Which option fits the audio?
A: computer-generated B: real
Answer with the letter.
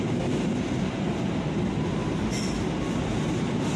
B